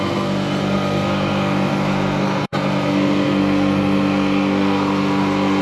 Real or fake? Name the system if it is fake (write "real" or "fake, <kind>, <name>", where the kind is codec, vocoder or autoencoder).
fake, codec, SNAC